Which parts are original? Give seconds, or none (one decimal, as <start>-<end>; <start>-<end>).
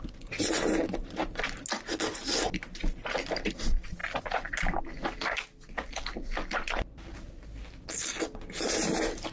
0.0-9.3